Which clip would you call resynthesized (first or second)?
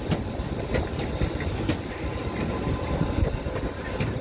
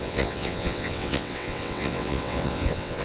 second